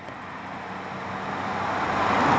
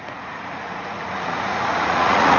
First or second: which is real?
first